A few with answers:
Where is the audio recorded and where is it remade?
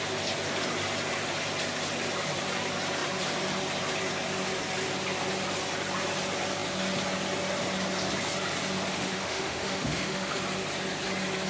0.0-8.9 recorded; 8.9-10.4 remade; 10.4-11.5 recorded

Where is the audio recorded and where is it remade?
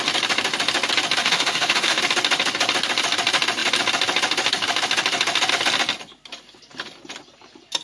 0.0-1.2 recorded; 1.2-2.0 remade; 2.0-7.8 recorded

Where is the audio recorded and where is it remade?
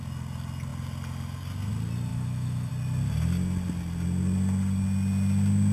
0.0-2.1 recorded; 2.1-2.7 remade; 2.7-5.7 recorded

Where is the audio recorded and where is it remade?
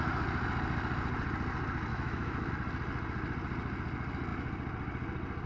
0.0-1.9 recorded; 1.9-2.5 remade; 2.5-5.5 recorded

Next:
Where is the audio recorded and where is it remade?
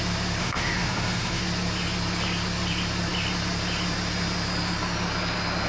0.0-0.4 recorded; 0.4-1.4 remade; 1.4-5.7 recorded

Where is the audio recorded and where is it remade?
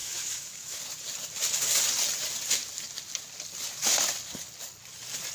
0.0-0.8 remade; 0.8-5.3 recorded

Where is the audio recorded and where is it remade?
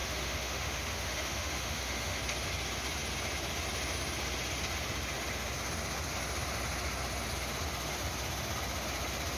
0.0-2.2 remade; 2.2-9.4 recorded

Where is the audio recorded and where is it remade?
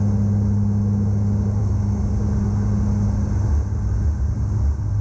0.0-1.6 recorded; 1.6-2.1 remade; 2.1-5.0 recorded